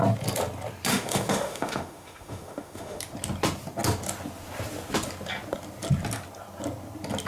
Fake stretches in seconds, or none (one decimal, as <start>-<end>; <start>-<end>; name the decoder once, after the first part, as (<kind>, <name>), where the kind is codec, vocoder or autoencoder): 0.9-3.0 (autoencoder, DAC-VAE)